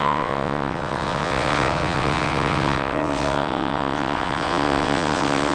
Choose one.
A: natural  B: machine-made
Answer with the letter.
B